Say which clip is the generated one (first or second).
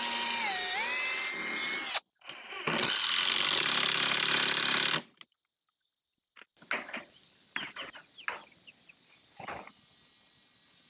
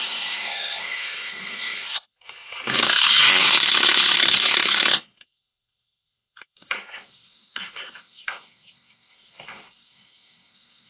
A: second